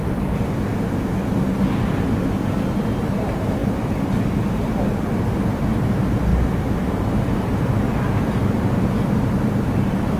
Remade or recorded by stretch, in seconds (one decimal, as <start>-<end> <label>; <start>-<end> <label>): 0.0-10.2 recorded